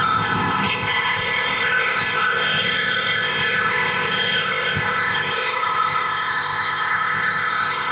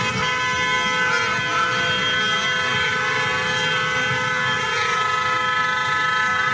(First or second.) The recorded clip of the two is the second